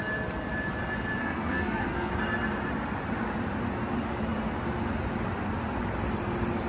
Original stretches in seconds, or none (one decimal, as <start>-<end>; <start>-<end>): 0.0-1.2; 2.1-6.7